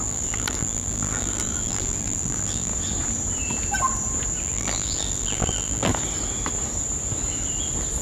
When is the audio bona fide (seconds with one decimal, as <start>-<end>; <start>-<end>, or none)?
2.7-4.4; 5.9-8.0